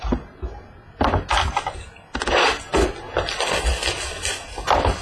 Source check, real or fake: real